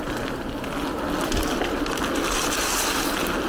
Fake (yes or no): no